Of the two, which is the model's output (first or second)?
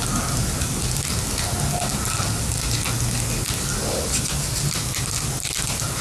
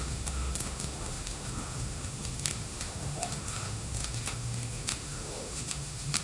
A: second